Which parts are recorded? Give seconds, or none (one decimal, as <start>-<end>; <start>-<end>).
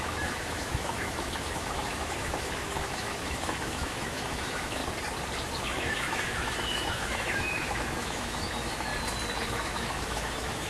4.8-5.6; 8.9-9.5